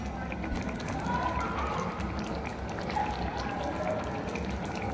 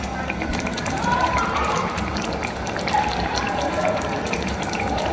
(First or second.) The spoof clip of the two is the second